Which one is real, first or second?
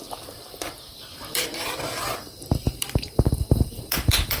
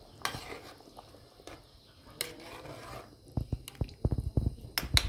second